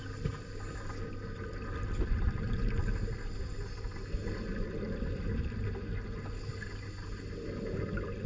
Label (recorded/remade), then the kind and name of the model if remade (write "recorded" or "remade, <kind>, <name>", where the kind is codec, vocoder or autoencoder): recorded